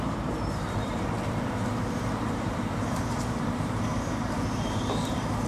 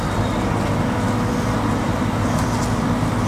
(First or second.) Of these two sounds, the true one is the second